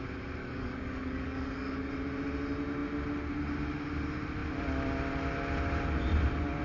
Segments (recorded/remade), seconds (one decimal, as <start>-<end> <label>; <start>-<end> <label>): 0.0-0.4 recorded; 0.4-1.9 remade; 1.9-6.6 recorded